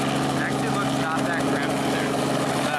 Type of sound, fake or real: real